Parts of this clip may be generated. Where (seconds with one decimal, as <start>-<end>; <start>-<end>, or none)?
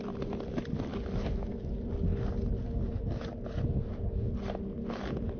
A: none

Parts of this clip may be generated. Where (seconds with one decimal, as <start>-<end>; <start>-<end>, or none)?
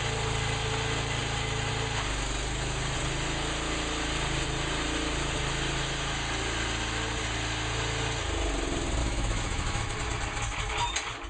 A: 9.0-9.8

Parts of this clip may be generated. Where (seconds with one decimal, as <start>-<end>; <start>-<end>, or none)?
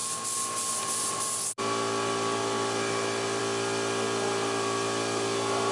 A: none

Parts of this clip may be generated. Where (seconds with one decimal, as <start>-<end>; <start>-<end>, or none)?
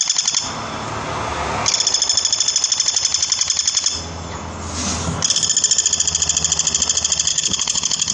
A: 7.3-8.1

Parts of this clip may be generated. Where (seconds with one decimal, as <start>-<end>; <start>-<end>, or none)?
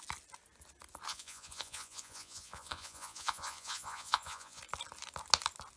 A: 1.1-4.6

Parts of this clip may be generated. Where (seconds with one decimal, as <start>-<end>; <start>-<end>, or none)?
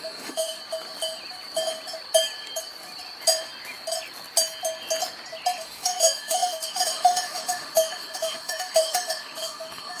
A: 0.0-0.6; 5.6-10.0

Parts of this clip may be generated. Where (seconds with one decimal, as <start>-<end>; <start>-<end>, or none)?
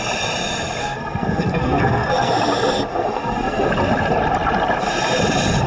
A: 0.8-2.3; 2.9-3.7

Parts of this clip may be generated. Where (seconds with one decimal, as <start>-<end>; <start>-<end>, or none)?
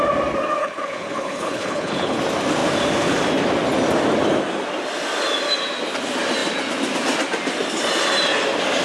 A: 0.6-2.2